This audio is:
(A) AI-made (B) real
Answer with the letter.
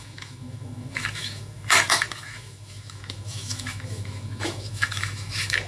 A